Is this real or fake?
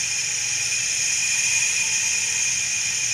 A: fake